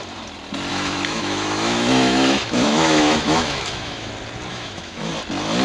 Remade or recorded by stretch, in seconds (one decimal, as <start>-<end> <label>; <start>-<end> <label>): 0.0-0.7 recorded; 0.7-4.1 remade; 4.1-4.5 recorded; 4.5-5.1 remade; 5.1-5.6 recorded